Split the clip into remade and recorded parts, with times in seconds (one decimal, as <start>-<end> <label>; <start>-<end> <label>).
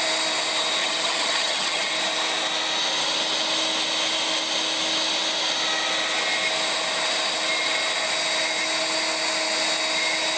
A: 0.0-0.8 recorded; 0.8-1.9 remade; 1.9-10.4 recorded